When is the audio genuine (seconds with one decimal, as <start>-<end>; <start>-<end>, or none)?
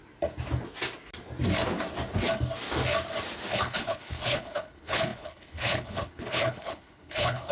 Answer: 0.0-3.5